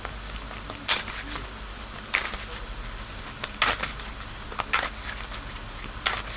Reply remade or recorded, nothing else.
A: recorded